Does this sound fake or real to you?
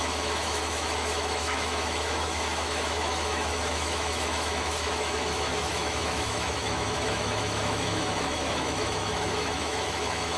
fake